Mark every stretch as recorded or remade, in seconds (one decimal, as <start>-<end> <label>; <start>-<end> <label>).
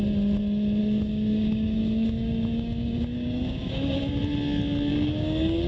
0.0-0.8 recorded; 0.8-4.2 remade; 4.2-4.9 recorded; 4.9-5.7 remade